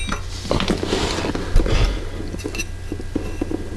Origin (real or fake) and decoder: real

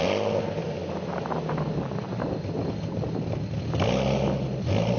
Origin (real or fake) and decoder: real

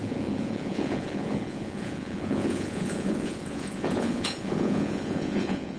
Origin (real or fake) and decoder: fake, vocoder, Vocos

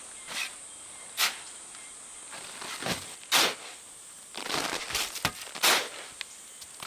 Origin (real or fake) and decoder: real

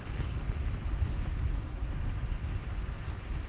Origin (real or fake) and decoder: real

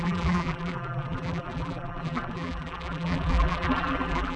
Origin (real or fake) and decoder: fake, vocoder, BigVGAN v2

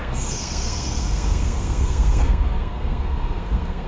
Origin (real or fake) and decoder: fake, codec, SNAC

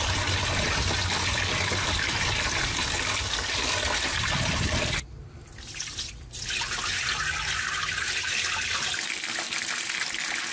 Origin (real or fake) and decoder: real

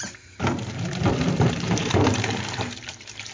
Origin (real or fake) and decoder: fake, vocoder, BigVGAN v2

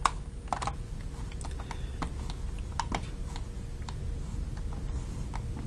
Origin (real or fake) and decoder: real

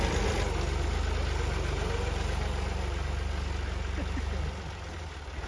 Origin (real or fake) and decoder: real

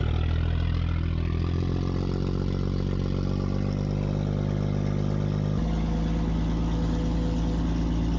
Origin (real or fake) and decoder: real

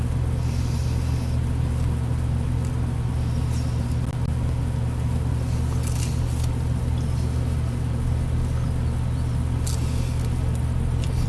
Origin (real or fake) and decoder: real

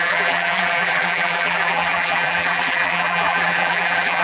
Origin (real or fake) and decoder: fake, vocoder, BigVGAN v2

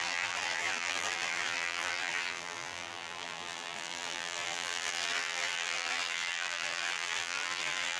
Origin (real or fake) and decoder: fake, vocoder, BigVGAN v2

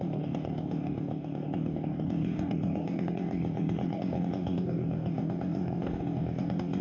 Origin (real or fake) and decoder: fake, codec, DAC